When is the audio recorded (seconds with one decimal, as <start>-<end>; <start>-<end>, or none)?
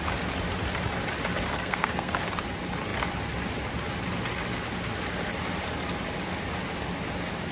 0.0-1.5; 2.1-7.5